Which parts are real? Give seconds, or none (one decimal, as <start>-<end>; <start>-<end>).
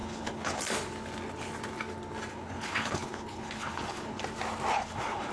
0.6-2.3; 4.2-4.7